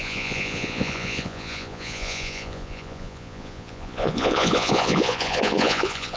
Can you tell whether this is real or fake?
fake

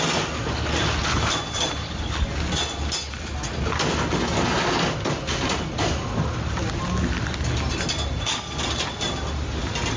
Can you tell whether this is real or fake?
real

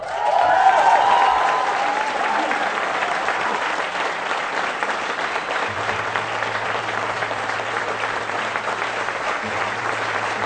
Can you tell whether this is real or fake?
fake